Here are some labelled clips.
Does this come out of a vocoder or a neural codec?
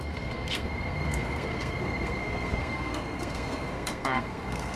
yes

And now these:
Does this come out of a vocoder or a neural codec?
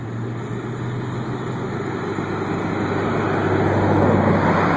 no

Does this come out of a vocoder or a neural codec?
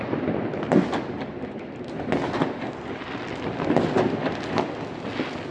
no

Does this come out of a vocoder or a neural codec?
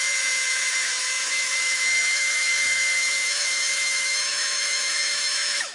yes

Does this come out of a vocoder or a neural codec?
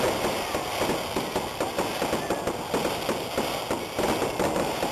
no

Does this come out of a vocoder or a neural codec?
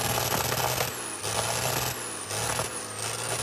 no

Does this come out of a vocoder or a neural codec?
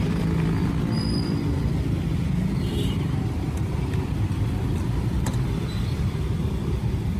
yes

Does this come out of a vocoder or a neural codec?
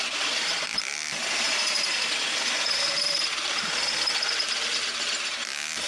no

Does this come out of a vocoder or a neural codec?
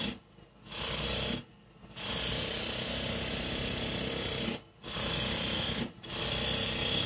no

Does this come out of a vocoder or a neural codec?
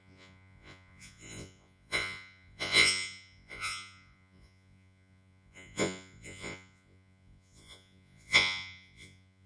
yes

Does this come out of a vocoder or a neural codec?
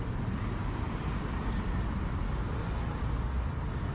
no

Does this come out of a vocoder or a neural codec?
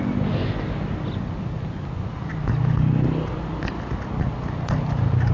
no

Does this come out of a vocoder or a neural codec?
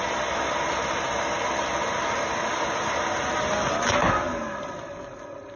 no